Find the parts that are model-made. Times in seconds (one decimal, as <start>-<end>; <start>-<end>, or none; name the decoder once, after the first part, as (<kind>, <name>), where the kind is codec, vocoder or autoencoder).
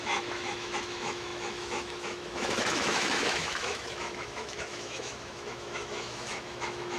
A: 0.0-7.0 (autoencoder, DAC-VAE)